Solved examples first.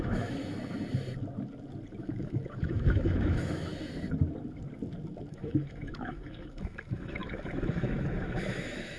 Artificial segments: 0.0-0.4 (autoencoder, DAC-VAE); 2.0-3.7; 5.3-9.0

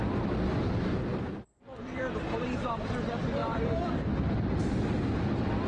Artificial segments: 1.1-2.9 (vocoder, BigVGAN v2); 3.4-4.3

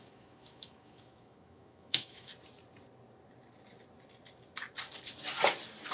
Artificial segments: 0.0-2.3 (autoencoder, DAC-VAE)

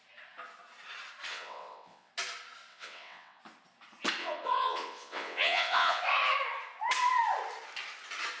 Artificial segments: 1.3-2.1 (vocoder, WaveNeXt); 2.7-3.4; 4.2-6.0